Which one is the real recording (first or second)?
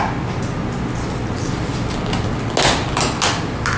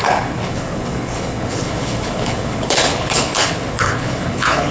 first